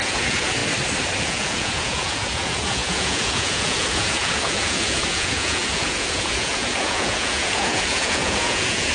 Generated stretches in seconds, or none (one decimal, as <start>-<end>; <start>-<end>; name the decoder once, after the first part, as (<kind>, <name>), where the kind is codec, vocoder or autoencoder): 0.0-0.6 (vocoder, Vocos); 1.2-8.9